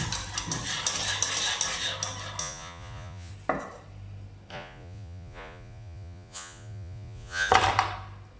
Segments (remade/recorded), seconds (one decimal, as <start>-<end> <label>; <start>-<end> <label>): 0.0-2.4 recorded; 2.4-3.3 remade; 3.3-4.5 recorded; 4.5-7.5 remade; 7.5-8.4 recorded

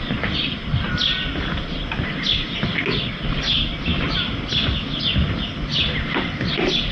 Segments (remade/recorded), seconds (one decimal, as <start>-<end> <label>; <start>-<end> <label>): 0.0-6.9 recorded

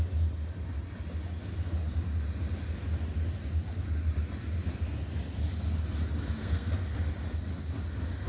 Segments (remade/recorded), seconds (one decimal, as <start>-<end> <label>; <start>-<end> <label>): 0.0-6.4 recorded; 6.4-7.1 remade; 7.1-8.3 recorded

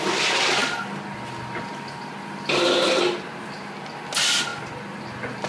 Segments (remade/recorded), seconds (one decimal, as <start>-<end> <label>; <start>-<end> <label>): 0.0-5.5 recorded

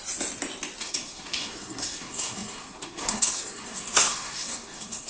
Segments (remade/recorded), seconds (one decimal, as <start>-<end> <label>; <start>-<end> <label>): 0.0-0.8 recorded; 0.8-5.1 remade

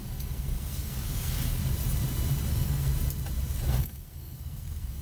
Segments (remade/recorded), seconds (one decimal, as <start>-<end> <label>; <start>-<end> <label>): 0.0-1.6 remade; 1.6-2.5 recorded; 2.5-2.9 remade; 2.9-3.7 recorded; 3.7-5.0 remade